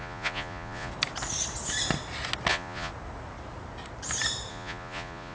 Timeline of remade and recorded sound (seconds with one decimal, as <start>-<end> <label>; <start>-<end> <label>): 0.0-0.9 remade; 0.9-2.5 recorded; 2.5-2.9 remade; 2.9-4.5 recorded; 4.5-5.3 remade